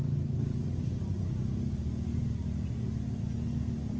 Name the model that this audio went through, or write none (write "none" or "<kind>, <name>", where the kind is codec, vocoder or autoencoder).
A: none